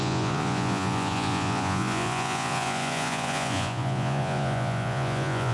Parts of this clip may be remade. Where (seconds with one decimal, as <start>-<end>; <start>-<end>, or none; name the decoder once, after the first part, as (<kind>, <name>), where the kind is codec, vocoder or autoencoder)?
0.0-5.5 (vocoder, Vocos)